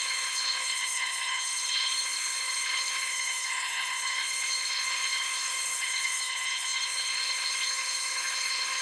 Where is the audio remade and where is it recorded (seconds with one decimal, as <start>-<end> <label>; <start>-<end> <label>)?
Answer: 0.0-8.8 remade